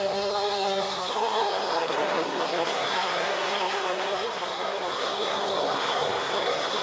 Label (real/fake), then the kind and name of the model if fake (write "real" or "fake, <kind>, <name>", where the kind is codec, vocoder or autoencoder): fake, codec, SNAC